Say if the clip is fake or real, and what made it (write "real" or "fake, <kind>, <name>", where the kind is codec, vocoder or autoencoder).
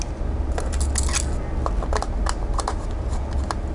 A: real